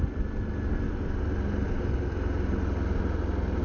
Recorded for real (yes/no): yes